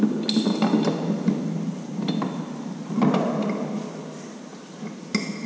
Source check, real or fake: real